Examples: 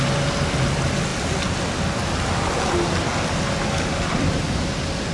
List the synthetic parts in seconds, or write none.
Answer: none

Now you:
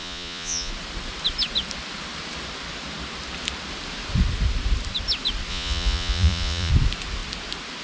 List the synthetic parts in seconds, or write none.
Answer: 0.0-0.7 (vocoder, Vocos); 5.5-6.7